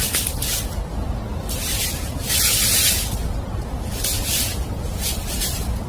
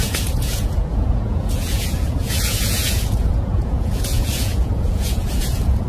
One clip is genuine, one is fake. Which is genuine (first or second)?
first